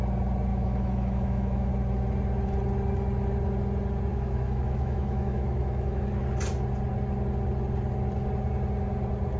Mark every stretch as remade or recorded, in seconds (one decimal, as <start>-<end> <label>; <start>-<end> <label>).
0.0-0.5 recorded; 0.5-1.7 remade; 1.7-4.1 recorded; 4.1-6.0 remade; 6.0-9.4 recorded